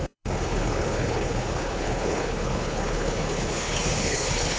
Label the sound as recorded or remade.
remade